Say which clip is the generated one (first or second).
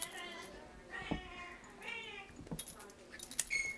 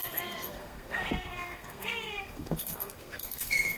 second